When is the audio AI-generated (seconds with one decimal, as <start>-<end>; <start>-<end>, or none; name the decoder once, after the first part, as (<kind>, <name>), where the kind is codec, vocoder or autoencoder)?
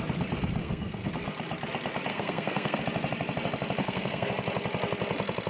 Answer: 0.6-1.1 (codec, SNAC); 2.1-2.8; 3.8-4.3